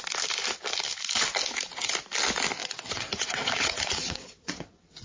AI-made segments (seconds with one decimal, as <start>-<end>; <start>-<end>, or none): 2.6-5.0